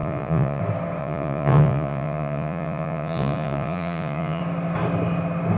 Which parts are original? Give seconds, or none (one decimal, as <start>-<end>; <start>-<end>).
0.6-1.0; 4.4-5.6